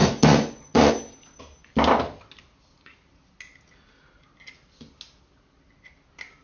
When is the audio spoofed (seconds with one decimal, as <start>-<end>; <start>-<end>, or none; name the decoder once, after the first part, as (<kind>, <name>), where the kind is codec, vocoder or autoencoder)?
0.0-0.9 (vocoder, Vocos)